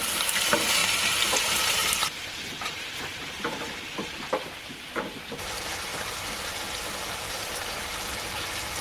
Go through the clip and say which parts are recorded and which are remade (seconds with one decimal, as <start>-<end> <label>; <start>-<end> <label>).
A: 0.0-0.8 remade; 0.8-1.4 recorded; 1.4-7.9 remade; 7.9-8.8 recorded